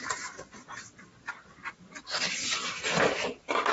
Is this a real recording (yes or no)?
yes